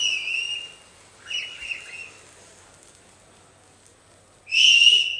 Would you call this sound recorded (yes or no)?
yes